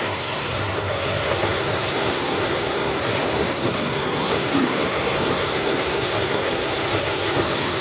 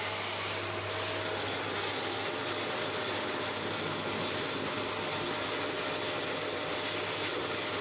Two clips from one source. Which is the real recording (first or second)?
second